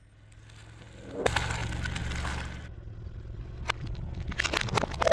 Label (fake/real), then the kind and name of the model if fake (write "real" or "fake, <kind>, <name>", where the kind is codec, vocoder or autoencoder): real